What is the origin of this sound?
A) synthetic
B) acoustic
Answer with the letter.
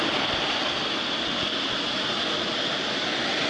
B